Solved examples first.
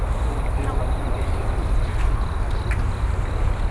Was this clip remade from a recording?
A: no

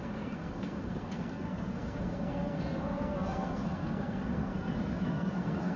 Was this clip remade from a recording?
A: yes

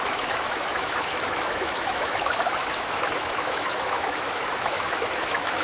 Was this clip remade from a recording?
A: yes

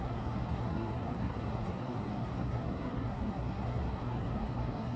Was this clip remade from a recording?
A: yes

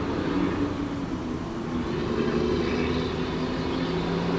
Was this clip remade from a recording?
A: no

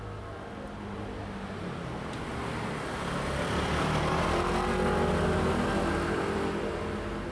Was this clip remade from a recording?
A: no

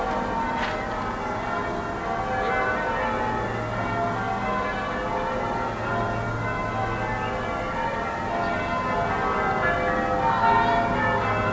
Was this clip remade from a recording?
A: no